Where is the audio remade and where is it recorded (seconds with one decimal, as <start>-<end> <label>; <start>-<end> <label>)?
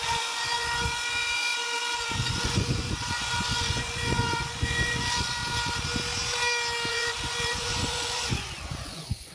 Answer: 0.0-5.4 remade; 5.4-6.9 recorded; 6.9-9.3 remade